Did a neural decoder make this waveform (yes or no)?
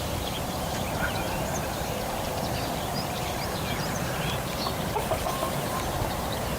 yes